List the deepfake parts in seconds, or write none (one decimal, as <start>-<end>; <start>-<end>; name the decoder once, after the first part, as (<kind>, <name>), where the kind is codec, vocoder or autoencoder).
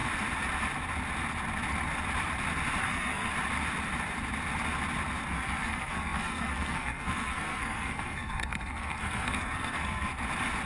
2.8-3.3 (codec, SNAC); 5.3-10.1